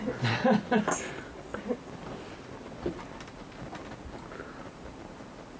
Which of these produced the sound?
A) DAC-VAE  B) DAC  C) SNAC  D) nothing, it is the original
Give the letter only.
D